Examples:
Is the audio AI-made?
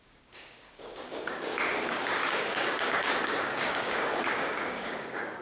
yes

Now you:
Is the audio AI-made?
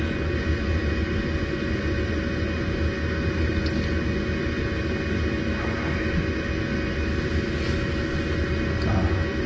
no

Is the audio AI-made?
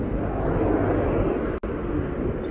no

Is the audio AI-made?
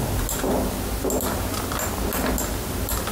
no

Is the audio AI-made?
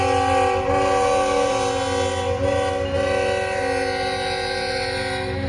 no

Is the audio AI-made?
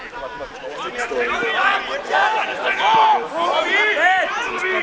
no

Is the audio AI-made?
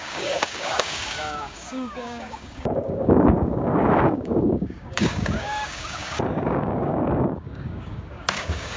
yes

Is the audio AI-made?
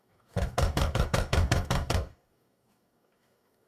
yes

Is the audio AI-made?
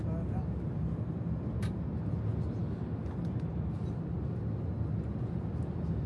no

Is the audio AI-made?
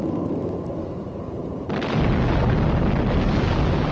no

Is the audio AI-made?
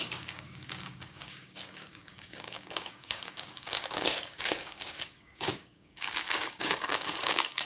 yes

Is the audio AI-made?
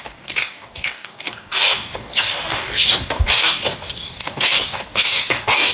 yes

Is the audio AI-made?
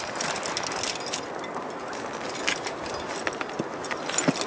no